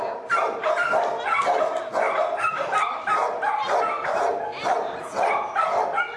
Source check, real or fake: real